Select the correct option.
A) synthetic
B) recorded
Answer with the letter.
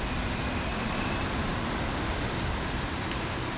B